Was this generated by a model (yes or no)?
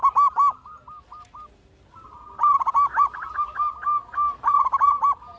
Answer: no